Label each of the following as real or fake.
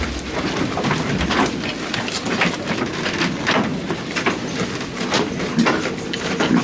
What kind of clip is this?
real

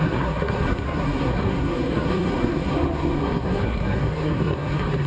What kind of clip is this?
fake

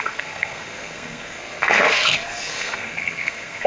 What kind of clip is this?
fake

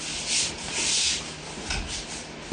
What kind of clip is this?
real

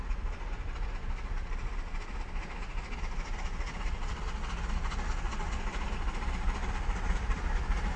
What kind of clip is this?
real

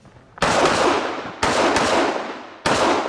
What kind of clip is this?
real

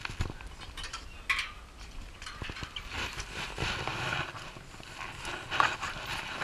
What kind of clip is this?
real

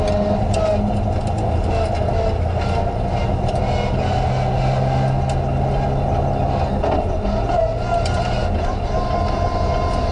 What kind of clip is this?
real